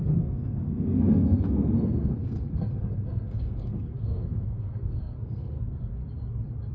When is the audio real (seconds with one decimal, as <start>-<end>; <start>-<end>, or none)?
6.0-6.7